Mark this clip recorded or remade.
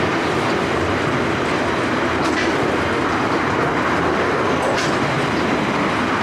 remade